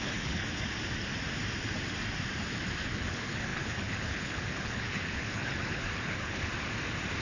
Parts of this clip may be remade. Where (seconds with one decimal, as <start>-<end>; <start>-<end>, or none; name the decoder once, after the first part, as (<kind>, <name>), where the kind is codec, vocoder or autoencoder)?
0.0-0.4 (codec, HILCodec); 2.8-6.5